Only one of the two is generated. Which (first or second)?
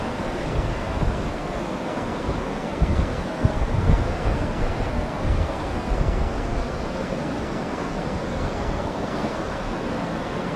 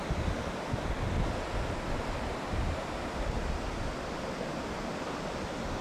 first